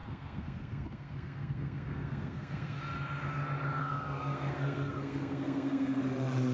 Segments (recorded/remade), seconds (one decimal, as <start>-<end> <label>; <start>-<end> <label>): 0.0-2.8 remade; 2.8-3.8 recorded; 3.8-6.0 remade; 6.0-6.5 recorded